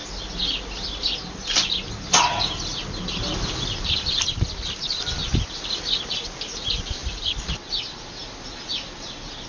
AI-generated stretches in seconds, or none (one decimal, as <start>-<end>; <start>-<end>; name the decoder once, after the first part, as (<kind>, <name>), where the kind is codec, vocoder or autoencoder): none